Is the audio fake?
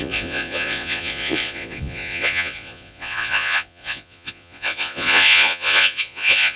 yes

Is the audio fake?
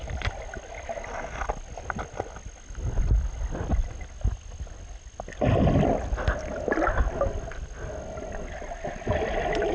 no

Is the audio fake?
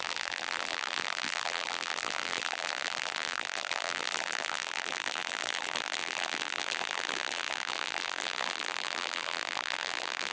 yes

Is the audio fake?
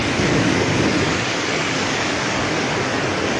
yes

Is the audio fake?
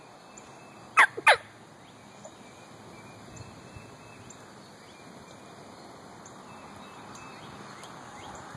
no